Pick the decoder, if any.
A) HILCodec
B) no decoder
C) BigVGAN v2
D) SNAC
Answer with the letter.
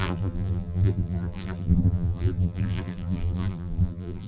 C